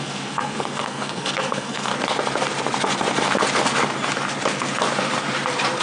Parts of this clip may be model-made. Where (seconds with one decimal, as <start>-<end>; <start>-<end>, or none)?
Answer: 0.0-1.9